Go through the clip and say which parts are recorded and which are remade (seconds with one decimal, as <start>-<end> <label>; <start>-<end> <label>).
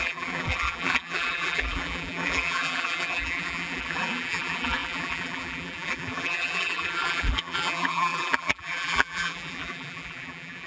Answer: 0.0-10.7 remade